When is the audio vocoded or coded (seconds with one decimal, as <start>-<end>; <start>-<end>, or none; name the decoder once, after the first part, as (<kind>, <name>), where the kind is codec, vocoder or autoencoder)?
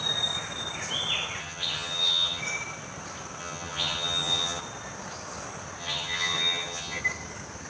1.4-2.4 (vocoder, HiFi-GAN); 3.4-4.6; 5.8-7.0